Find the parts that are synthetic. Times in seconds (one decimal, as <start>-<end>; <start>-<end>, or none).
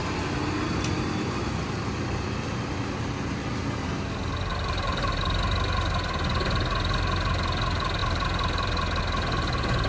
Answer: 4.5-5.2; 8.0-9.0